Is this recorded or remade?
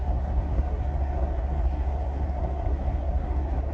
remade